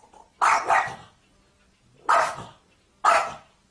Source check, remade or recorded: recorded